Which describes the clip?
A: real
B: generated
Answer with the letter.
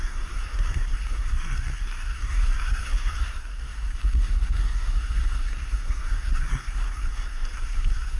B